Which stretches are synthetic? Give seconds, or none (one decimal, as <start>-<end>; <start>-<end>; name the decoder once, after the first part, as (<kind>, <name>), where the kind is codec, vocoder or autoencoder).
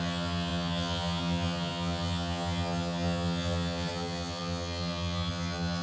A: 0.0-5.8 (vocoder, HiFi-GAN)